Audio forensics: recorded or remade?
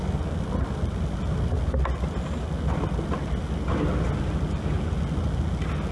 recorded